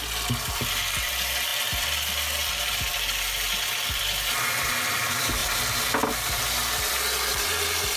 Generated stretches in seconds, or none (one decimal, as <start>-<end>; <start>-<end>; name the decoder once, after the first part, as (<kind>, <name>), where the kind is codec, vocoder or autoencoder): none